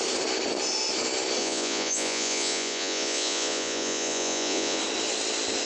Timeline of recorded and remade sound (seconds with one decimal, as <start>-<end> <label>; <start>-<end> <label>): 0.0-1.4 recorded; 1.4-4.8 remade; 4.8-5.7 recorded